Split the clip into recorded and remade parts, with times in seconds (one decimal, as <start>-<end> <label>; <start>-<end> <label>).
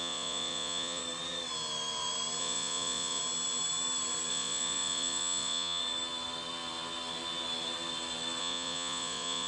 0.0-1.0 remade; 1.0-2.4 recorded; 2.4-3.2 remade; 3.2-4.3 recorded; 4.3-5.8 remade; 5.8-8.4 recorded; 8.4-9.5 remade